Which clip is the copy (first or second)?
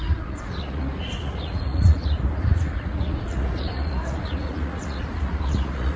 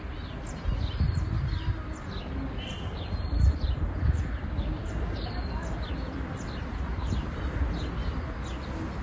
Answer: first